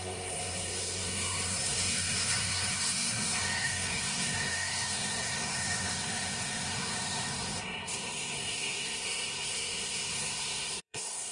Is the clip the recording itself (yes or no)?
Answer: no